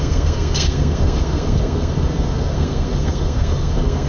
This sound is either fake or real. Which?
fake